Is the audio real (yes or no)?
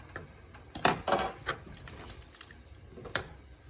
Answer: yes